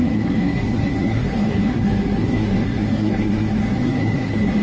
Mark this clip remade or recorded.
remade